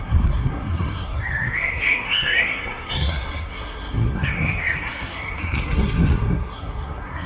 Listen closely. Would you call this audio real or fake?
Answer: fake